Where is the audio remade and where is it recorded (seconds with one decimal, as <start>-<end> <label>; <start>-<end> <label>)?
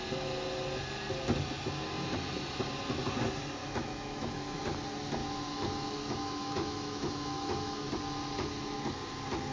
0.0-3.6 recorded; 3.6-4.6 remade; 4.6-5.2 recorded; 5.2-7.9 remade; 7.9-9.5 recorded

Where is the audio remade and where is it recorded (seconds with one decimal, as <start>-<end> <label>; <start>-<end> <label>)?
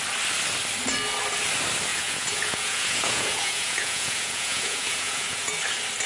0.0-1.9 recorded; 1.9-5.6 remade; 5.6-6.1 recorded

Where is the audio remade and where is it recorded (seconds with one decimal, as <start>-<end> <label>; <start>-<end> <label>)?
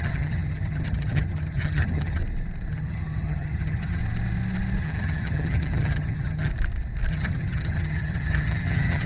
0.0-2.2 remade; 2.2-2.7 recorded; 2.7-4.0 remade; 4.0-4.8 recorded; 4.8-6.5 remade; 6.5-7.1 recorded; 7.1-9.1 remade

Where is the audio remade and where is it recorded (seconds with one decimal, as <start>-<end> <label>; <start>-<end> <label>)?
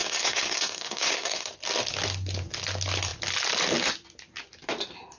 0.0-1.5 remade; 1.5-5.2 recorded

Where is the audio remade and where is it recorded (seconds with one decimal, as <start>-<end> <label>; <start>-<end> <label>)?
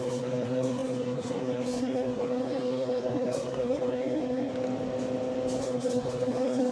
0.0-4.5 remade; 4.5-5.6 recorded; 5.6-6.7 remade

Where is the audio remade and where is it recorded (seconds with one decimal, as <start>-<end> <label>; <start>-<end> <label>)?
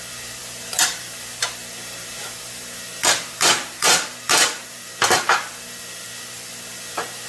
0.0-0.4 recorded; 0.4-4.8 remade; 4.8-7.3 recorded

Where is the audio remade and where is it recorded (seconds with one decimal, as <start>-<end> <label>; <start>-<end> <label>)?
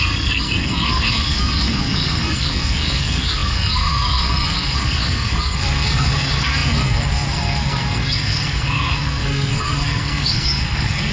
0.0-11.1 remade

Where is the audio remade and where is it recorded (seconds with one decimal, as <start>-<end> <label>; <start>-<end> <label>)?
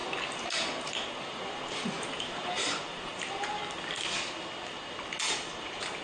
0.0-1.2 recorded; 1.2-3.6 remade; 3.6-5.5 recorded; 5.5-6.0 remade